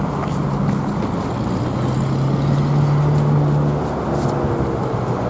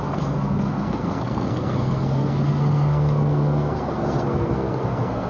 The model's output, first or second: second